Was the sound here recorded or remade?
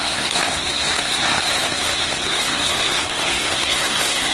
remade